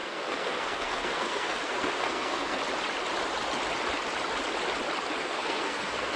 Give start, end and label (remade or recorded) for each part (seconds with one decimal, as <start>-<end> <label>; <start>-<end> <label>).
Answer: 0.0-2.6 remade; 2.6-5.2 recorded; 5.2-6.2 remade